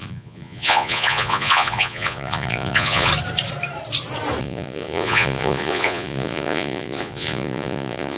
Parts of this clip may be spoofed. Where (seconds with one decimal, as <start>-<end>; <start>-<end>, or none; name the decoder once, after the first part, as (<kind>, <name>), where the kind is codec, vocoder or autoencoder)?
0.0-3.1 (vocoder, Vocos); 4.4-8.2